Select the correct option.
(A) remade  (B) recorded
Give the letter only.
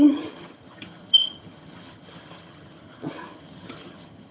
A